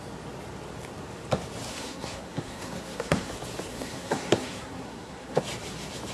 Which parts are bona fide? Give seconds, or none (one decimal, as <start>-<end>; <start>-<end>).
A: 0.0-1.7; 3.3-3.7; 5.4-6.1